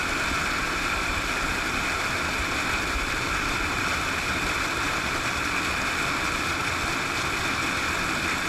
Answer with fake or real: real